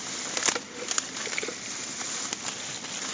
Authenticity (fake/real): real